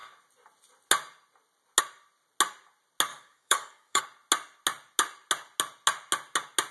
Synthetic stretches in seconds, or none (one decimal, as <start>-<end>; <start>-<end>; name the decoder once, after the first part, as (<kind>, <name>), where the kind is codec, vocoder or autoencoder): 3.1-4.0 (codec, DAC)